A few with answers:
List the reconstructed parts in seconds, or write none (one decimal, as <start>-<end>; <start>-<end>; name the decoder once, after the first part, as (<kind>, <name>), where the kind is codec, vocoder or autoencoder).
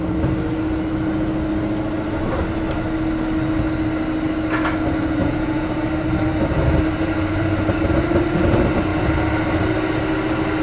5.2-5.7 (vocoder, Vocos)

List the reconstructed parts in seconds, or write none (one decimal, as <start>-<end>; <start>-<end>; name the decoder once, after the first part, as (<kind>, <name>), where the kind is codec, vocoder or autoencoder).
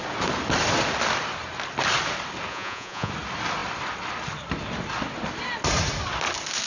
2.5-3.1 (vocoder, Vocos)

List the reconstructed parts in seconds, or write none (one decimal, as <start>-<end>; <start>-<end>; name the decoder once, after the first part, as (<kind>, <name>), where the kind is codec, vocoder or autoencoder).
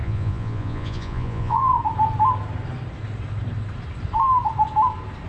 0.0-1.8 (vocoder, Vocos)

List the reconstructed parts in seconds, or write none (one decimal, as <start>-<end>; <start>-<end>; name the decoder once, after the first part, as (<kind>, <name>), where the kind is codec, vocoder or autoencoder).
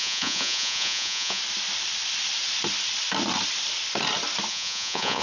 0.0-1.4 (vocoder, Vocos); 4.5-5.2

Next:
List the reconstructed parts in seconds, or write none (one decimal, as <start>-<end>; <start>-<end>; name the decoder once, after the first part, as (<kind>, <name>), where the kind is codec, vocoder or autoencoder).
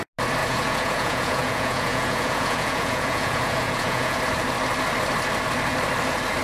0.4-4.2 (vocoder, Vocos)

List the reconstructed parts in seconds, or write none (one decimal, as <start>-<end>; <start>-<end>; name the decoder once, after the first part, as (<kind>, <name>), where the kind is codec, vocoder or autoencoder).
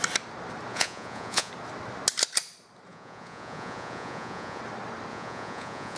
0.7-1.5 (vocoder, Vocos); 2.9-4.6; 5.1-6.0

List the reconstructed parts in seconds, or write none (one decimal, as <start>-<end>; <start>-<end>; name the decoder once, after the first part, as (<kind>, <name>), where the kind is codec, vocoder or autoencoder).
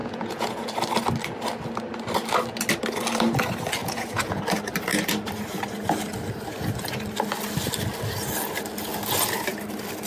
0.0-0.7 (vocoder, Vocos); 3.8-4.4